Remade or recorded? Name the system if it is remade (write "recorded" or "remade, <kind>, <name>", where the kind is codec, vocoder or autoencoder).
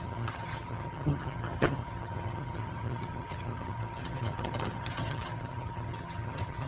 remade, vocoder, HiFi-GAN